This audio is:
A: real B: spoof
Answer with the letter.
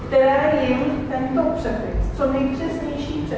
A